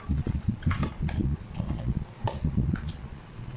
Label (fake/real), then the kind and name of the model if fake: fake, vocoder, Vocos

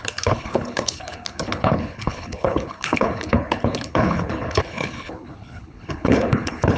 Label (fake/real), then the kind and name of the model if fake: fake, codec, HILCodec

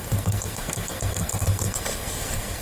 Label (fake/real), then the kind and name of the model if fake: fake, codec, SNAC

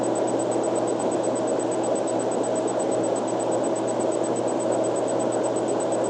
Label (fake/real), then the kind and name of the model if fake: real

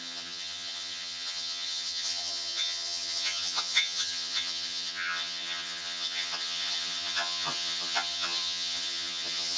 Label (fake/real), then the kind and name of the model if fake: fake, vocoder, HiFi-GAN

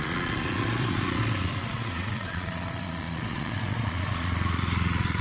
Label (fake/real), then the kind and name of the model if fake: fake, vocoder, Vocos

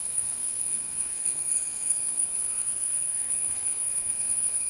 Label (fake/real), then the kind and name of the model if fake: fake, codec, SNAC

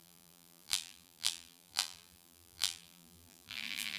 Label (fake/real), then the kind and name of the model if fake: fake, vocoder, BigVGAN v2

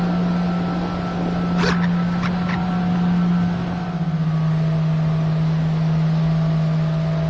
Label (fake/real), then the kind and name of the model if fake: real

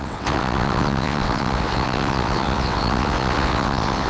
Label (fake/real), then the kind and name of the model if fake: fake, vocoder, WaveNeXt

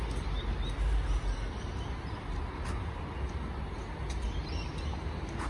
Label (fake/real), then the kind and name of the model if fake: real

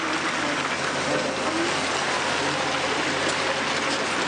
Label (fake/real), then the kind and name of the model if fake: real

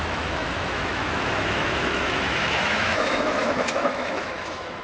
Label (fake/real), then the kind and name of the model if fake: fake, autoencoder, DAC-VAE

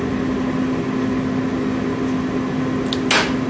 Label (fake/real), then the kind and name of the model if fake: real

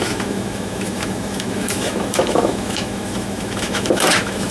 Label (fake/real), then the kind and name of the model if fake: fake, autoencoder, DAC-VAE